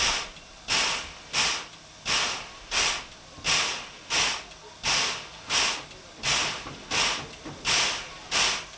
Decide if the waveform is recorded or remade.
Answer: recorded